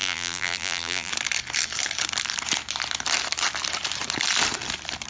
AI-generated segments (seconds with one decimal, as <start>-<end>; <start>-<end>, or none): 0.0-1.1